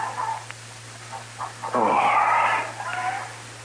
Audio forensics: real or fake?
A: real